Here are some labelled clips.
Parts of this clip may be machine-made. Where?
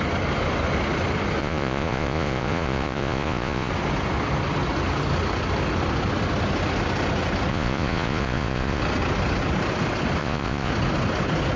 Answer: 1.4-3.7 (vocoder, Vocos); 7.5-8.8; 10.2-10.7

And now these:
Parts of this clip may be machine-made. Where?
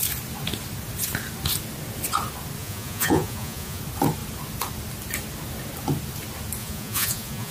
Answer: 2.6-3.8 (vocoder, Vocos); 6.6-7.5